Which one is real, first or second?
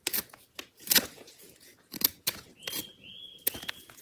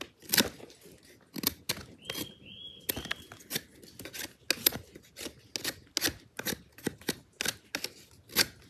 second